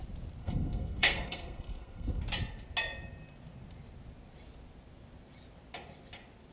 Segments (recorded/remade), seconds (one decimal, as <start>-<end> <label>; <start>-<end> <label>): 0.0-0.4 recorded; 0.4-2.2 remade; 2.2-6.5 recorded